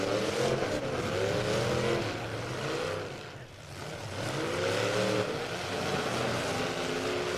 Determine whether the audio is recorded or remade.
recorded